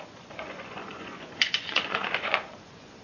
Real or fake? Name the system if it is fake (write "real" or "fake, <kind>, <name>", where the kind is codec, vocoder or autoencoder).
fake, vocoder, Vocos